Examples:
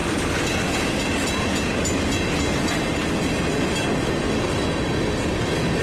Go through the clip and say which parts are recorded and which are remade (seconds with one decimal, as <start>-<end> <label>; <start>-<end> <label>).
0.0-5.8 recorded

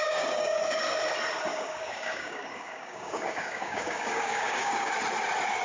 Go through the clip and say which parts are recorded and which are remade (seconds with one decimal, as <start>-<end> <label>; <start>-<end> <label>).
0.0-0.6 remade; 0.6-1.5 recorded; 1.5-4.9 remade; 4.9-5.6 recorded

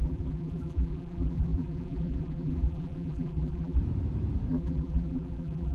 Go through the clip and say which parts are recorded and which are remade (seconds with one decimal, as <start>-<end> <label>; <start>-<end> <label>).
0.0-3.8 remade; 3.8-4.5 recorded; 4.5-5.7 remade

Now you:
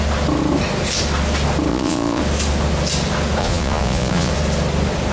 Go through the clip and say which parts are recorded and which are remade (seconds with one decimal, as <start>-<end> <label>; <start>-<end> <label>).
0.0-1.7 recorded; 1.7-2.2 remade; 2.2-3.4 recorded; 3.4-4.3 remade; 4.3-5.1 recorded

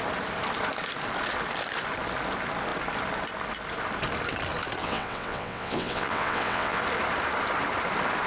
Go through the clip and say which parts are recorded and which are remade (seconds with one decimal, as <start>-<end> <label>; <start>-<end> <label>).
0.0-4.8 recorded; 4.8-6.8 remade; 6.8-8.3 recorded